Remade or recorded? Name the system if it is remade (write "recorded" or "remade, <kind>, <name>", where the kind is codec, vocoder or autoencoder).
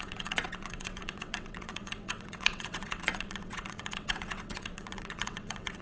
remade, vocoder, WaveNeXt